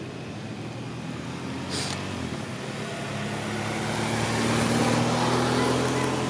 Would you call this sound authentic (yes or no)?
yes